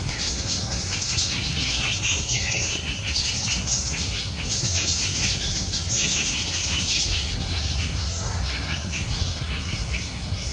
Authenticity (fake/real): fake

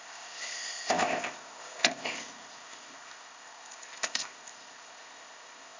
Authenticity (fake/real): fake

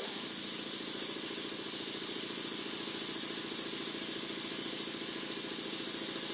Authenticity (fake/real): real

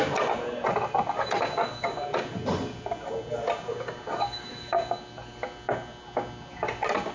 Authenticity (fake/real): real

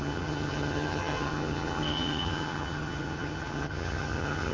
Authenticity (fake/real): fake